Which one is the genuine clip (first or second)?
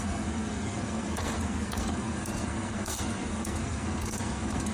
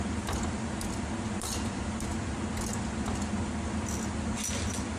second